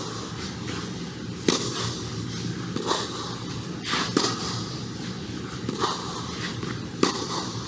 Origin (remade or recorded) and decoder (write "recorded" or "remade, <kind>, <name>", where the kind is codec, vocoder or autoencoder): recorded